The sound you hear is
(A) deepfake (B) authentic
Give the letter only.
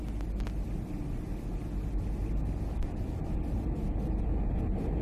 B